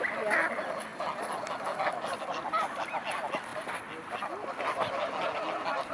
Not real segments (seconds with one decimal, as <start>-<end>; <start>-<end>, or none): none